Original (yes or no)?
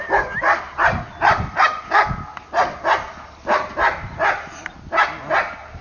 yes